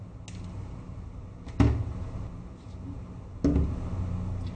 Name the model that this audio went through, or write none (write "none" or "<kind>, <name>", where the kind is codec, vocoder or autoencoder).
none